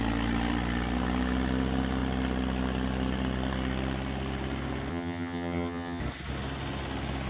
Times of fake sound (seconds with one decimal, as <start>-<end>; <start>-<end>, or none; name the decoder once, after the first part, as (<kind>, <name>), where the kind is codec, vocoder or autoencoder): 4.9-6.0 (vocoder, HiFi-GAN)